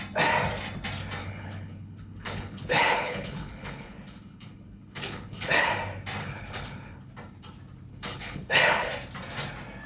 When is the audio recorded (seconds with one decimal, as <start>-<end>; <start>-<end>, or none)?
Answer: 0.0-1.2; 5.7-6.2; 7.1-7.9; 8.9-9.9